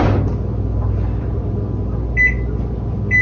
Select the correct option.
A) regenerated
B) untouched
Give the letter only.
B